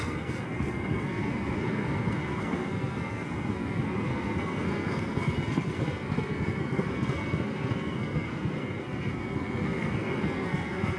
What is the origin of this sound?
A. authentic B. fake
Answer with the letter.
B